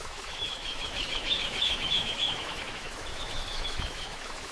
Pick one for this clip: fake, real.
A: fake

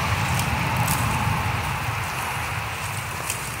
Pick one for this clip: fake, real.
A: real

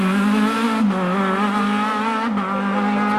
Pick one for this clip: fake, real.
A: real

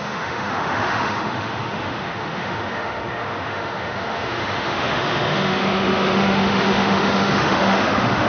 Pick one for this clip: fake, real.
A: fake